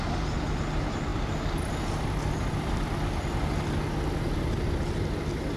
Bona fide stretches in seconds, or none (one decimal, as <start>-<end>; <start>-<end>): 0.0-5.6